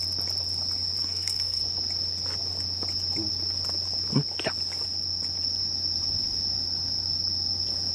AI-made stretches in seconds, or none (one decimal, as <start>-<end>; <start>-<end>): 1.0-1.6